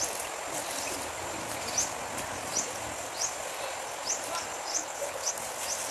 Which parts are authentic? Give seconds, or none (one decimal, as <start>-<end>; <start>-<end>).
0.0-4.7; 5.3-5.9